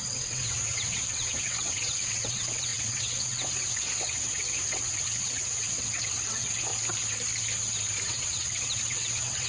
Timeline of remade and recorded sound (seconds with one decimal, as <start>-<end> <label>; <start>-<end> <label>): 0.0-6.7 remade; 6.7-8.1 recorded; 8.1-9.5 remade